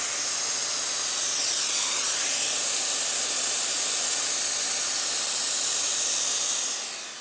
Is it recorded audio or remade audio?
recorded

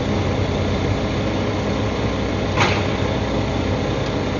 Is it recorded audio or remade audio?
recorded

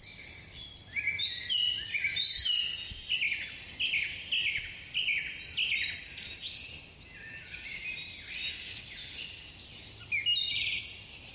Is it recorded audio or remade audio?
recorded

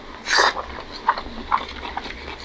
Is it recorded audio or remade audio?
recorded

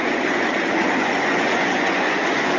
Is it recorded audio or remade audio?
remade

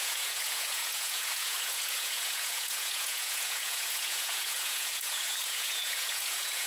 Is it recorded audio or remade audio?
remade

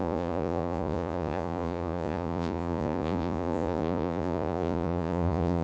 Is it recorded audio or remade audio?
remade